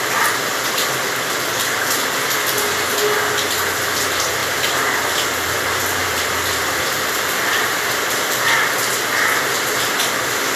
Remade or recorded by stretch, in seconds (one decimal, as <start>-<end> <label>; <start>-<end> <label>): 0.0-4.4 recorded; 4.4-5.0 remade; 5.0-6.0 recorded; 6.0-8.5 remade; 8.5-10.6 recorded